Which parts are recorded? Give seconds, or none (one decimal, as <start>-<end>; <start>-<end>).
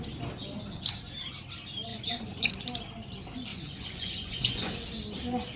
0.0-1.9; 2.5-3.5; 4.7-5.6